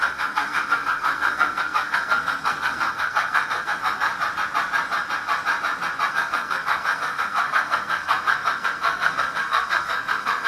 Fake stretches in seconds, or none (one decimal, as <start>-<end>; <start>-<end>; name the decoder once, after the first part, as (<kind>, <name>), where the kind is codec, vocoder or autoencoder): 0.0-4.1 (codec, SNAC); 6.1-10.5